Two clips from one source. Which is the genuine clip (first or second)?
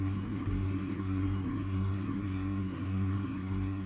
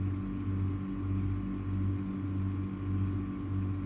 second